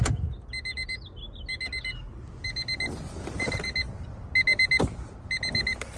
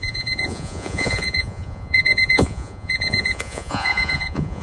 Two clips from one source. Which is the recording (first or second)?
first